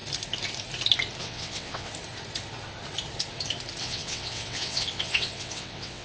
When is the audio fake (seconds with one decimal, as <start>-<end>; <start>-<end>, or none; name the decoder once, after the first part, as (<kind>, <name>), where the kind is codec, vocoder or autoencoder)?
1.2-1.9 (vocoder, WaveNeXt); 3.8-6.0